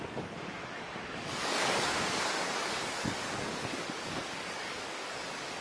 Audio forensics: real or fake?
fake